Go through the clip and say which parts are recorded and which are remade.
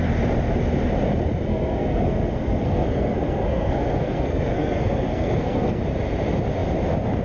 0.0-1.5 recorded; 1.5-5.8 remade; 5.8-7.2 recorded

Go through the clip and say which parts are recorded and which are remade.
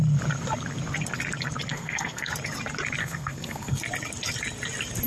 0.0-1.7 recorded; 1.7-2.3 remade; 2.3-3.0 recorded; 3.0-3.8 remade; 3.8-5.1 recorded